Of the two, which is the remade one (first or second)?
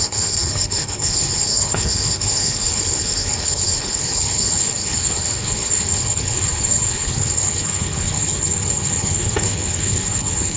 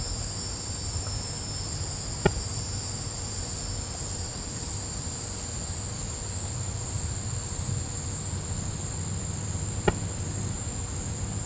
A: first